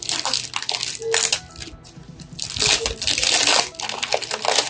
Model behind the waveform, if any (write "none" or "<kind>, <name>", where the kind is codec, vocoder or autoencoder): none